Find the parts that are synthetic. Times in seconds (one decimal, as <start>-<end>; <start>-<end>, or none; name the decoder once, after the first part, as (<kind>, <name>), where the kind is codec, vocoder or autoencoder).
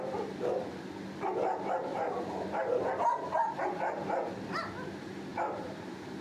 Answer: 1.9-2.8 (vocoder, BigVGAN v2); 5.3-6.2